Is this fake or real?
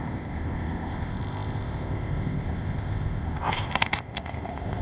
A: fake